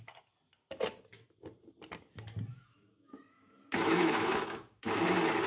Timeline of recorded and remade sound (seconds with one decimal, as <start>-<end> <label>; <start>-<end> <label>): 0.0-2.5 recorded; 2.5-4.9 remade; 4.9-5.5 recorded